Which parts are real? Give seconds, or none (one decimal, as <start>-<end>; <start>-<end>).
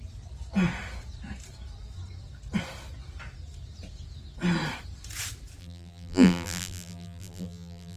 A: 0.0-5.6